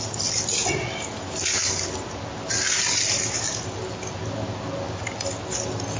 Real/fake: real